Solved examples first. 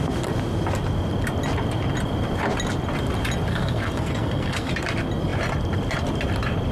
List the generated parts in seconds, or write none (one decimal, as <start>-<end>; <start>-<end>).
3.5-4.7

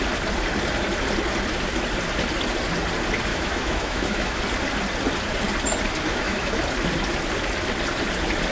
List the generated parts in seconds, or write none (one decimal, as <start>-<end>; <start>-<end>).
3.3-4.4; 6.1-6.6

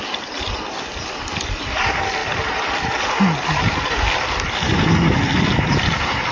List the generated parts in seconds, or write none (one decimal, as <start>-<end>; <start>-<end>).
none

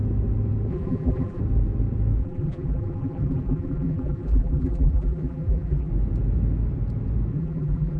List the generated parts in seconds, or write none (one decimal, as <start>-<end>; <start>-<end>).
0.7-1.4; 2.2-5.9; 7.3-8.0